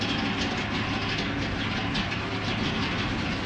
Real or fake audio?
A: real